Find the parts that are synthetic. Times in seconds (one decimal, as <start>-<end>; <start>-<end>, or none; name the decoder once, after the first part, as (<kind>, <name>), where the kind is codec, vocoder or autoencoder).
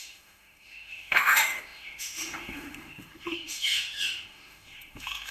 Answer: 0.0-5.3 (autoencoder, DAC-VAE)